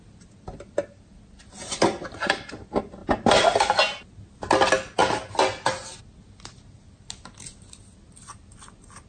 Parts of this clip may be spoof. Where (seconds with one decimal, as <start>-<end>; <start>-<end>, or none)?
none